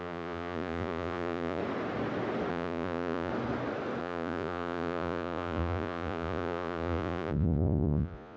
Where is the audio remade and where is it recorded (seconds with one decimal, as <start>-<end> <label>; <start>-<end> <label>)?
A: 0.0-1.6 remade; 1.6-2.5 recorded; 2.5-3.3 remade; 3.3-4.0 recorded; 4.0-8.4 remade